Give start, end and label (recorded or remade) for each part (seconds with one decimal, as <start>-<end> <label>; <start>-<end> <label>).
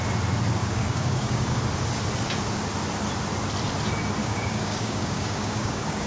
0.0-0.6 recorded; 0.6-1.6 remade; 1.6-4.2 recorded; 4.2-6.1 remade